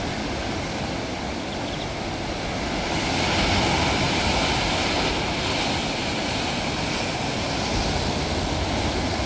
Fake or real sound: real